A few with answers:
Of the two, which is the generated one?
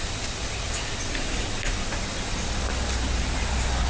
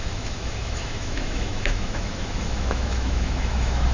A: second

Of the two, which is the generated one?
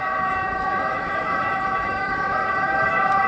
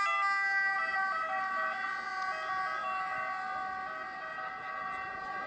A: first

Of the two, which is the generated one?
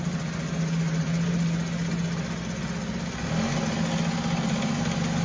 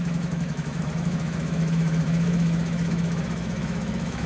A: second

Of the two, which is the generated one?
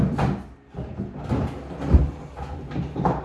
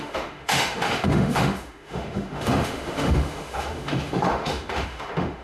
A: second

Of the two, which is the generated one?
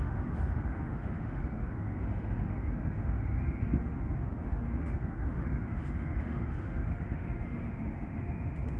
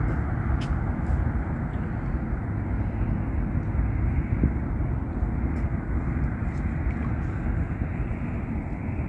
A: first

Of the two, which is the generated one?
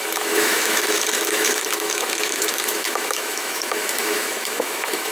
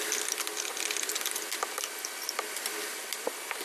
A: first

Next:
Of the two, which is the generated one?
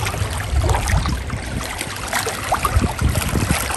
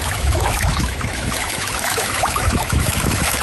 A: second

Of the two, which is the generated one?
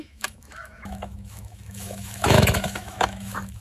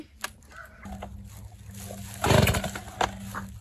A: first